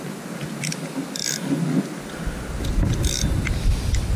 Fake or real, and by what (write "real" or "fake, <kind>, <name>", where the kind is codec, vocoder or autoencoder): real